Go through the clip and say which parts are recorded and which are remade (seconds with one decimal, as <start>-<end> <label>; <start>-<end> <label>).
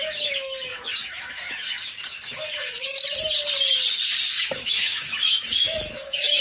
0.0-3.0 remade; 3.0-4.4 recorded; 4.4-6.4 remade